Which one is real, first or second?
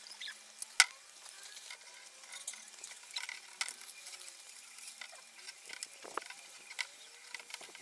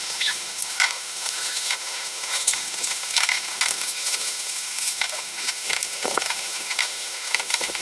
first